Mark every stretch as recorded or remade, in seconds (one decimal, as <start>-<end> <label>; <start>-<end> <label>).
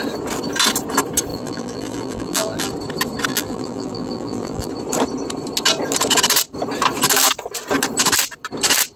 0.0-1.3 recorded; 1.3-2.7 remade; 2.7-3.3 recorded; 3.3-4.7 remade; 4.7-9.0 recorded